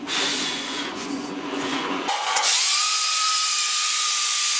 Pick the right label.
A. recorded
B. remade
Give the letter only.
B